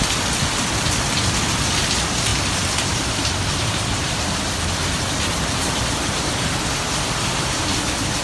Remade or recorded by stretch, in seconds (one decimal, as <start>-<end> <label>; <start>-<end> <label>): 0.0-7.3 recorded; 7.3-8.2 remade